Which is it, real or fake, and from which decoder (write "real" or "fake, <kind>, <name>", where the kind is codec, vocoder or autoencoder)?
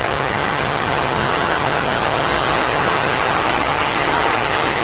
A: fake, vocoder, HiFi-GAN